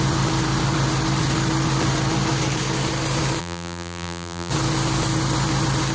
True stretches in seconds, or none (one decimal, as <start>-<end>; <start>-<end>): 0.0-3.4; 4.5-5.9